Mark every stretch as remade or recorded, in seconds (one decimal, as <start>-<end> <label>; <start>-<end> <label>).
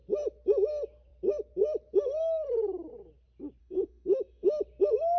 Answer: 0.0-3.6 recorded; 3.6-4.6 remade; 4.6-5.2 recorded